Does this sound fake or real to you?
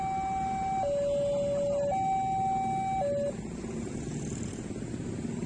real